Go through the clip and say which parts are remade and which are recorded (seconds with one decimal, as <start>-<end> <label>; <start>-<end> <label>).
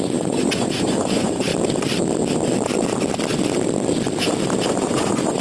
0.0-1.5 remade; 1.5-4.7 recorded; 4.7-5.4 remade